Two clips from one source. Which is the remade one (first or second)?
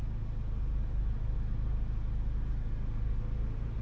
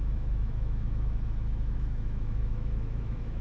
second